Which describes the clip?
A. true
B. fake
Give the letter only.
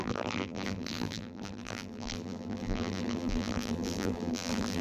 B